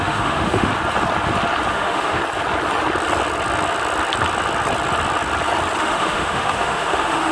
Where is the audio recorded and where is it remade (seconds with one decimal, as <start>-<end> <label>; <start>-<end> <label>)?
0.0-0.7 remade; 0.7-1.7 recorded; 1.7-2.2 remade; 2.2-5.8 recorded; 5.8-7.3 remade